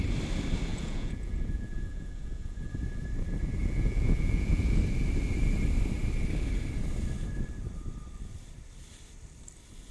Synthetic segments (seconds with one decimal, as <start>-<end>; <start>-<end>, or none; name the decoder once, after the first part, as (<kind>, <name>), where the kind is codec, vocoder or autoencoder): 0.7-2.7 (vocoder, Vocos); 3.6-4.8